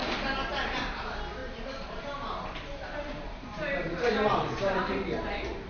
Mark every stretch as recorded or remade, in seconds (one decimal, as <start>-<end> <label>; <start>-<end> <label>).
0.0-0.9 remade; 0.9-1.4 recorded; 1.4-2.0 remade; 2.0-2.7 recorded; 2.7-5.7 remade